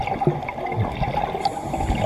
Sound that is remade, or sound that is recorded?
recorded